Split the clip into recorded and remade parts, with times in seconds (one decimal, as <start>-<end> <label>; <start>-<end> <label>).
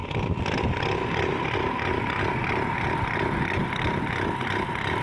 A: 0.0-5.0 recorded